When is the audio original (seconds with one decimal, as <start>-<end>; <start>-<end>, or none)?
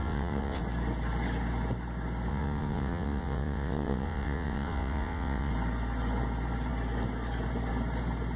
0.6-2.3; 5.5-8.4